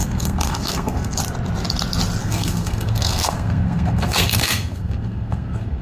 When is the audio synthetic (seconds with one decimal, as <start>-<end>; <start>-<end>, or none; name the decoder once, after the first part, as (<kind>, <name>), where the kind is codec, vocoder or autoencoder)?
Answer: 0.0-1.2 (codec, SNAC); 2.2-5.8